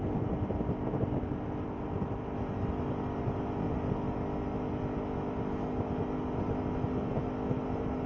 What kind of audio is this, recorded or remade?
recorded